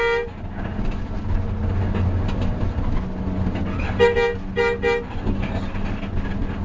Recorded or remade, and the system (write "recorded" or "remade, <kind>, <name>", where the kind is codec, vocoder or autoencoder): recorded